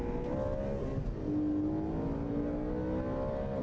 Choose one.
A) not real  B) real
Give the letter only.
B